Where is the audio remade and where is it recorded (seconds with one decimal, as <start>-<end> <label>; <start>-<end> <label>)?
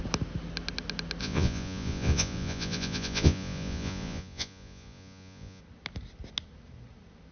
0.0-1.2 recorded; 1.2-5.6 remade; 5.6-7.3 recorded